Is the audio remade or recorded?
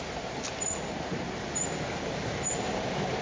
recorded